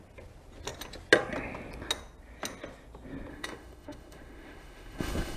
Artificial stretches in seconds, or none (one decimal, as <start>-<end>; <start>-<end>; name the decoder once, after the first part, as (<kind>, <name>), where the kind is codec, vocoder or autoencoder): 3.3-5.4 (autoencoder, DAC-VAE)